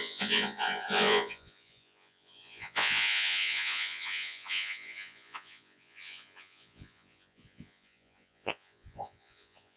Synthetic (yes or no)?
yes